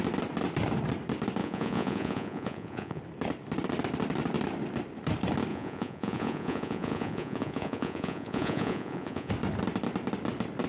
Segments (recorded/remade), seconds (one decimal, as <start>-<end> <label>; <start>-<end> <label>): 0.0-1.4 recorded; 1.4-3.0 remade; 3.0-5.5 recorded; 5.5-9.3 remade; 9.3-10.7 recorded